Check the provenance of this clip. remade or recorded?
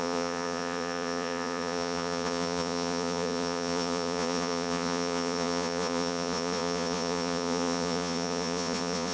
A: remade